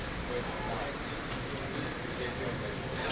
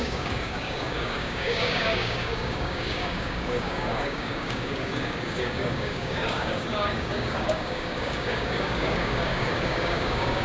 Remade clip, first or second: second